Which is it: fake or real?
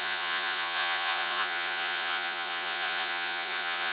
fake